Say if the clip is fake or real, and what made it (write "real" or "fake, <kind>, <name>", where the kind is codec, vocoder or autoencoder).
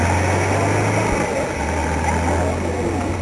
real